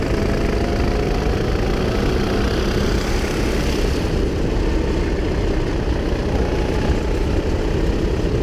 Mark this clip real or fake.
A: real